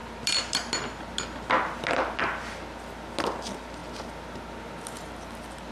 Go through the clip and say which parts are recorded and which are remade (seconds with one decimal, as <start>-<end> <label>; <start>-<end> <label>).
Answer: 0.0-5.7 recorded